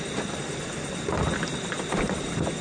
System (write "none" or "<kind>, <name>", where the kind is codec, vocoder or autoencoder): none